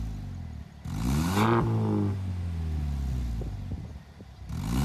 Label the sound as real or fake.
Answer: real